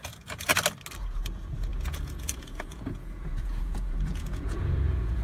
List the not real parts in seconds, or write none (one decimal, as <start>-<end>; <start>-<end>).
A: 0.0-0.5; 1.0-5.2